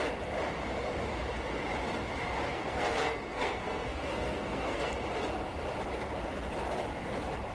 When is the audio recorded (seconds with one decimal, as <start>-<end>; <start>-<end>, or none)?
0.0-2.5; 4.9-7.5